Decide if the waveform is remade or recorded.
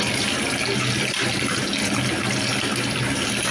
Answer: recorded